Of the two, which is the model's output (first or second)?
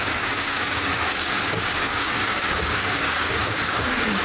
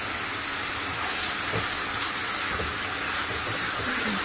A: first